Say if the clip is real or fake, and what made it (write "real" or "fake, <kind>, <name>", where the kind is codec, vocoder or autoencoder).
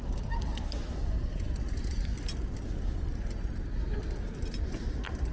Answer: real